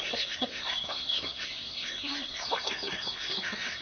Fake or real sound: fake